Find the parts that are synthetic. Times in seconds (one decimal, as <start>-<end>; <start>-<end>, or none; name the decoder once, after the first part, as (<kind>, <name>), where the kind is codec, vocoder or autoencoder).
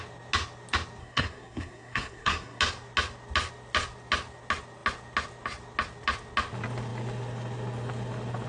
1.0-2.6 (codec, SNAC)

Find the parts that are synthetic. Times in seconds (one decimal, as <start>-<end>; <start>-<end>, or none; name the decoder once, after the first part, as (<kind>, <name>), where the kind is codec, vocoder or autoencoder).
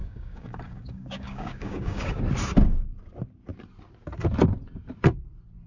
0.0-2.2 (codec, DAC)